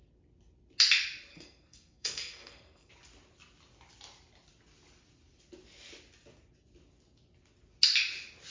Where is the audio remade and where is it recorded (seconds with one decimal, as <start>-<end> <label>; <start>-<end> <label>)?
0.0-1.3 recorded; 1.3-2.9 remade; 2.9-8.5 recorded